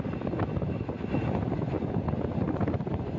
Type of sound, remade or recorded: recorded